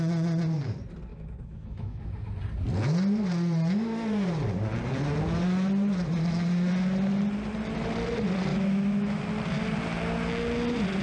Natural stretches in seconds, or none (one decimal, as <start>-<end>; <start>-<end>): 0.0-1.1; 2.0-8.5; 9.2-11.0